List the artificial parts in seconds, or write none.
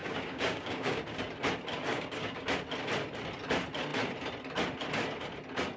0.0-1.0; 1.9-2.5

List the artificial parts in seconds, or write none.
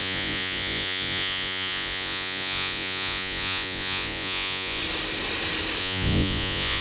0.0-4.8; 5.8-6.8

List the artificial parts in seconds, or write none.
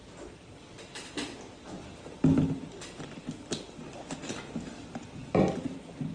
none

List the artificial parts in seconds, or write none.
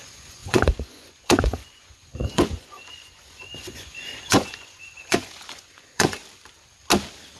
0.0-6.2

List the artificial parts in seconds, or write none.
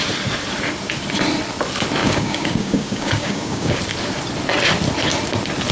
2.0-3.8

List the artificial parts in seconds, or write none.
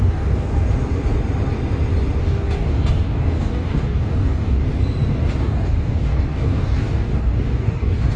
0.0-0.5; 2.2-4.6; 5.4-8.2